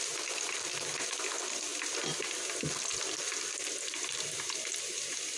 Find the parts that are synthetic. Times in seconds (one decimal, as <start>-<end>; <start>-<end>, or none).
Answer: 0.0-1.7; 4.8-5.4